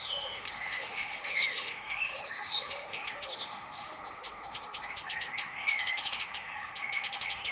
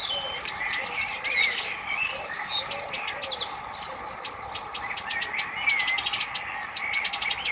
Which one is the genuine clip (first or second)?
second